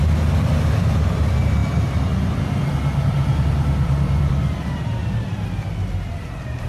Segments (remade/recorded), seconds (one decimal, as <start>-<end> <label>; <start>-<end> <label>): 0.0-1.6 remade; 1.6-3.4 recorded; 3.4-6.7 remade